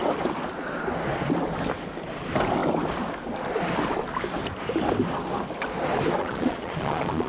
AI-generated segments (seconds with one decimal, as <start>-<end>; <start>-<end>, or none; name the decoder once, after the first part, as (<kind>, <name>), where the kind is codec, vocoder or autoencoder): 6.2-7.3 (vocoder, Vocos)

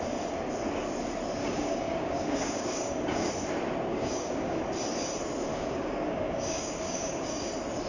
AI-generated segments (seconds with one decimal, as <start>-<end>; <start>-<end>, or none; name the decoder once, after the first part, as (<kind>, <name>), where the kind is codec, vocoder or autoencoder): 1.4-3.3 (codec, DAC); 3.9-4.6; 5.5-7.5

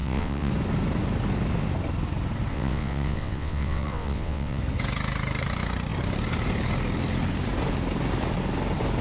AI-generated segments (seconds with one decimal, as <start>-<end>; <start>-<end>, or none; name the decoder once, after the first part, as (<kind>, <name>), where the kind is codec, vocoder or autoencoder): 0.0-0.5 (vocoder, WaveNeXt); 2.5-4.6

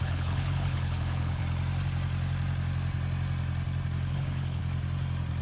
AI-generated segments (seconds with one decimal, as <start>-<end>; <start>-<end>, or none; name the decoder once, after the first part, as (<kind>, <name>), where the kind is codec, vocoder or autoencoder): 0.0-1.4 (codec, HILCodec); 4.1-4.6